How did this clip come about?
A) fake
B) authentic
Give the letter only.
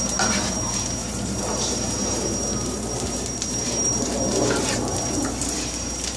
A